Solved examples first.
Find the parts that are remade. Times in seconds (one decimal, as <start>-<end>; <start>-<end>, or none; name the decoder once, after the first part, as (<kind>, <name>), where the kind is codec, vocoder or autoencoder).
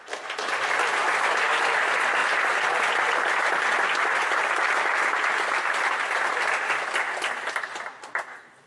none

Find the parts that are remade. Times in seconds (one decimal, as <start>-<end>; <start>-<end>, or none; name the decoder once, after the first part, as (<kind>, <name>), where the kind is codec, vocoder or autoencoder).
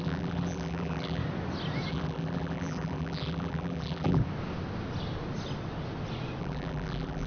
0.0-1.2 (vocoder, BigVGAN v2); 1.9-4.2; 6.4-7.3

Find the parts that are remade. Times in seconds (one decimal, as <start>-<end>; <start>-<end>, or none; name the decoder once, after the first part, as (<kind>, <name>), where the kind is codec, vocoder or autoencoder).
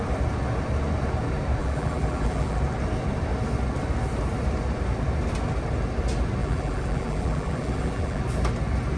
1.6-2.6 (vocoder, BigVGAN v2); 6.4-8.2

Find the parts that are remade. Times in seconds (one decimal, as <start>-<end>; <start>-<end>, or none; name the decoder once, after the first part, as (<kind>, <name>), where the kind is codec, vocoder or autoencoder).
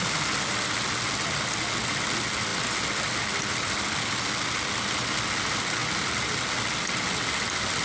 none